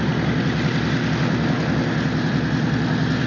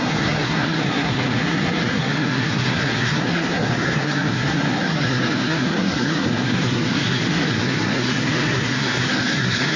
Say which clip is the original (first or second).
first